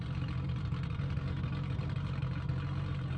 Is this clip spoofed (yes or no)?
yes